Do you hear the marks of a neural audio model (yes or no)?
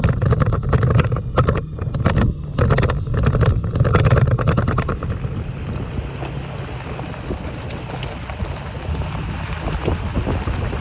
no